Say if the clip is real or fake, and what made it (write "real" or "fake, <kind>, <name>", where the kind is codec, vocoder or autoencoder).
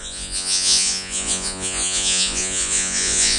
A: fake, vocoder, Vocos